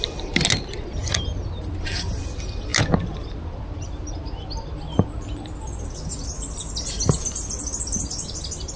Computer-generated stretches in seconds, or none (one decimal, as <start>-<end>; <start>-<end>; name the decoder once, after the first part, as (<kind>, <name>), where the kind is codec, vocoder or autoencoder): none